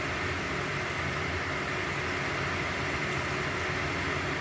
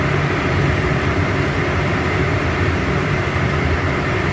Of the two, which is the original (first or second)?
first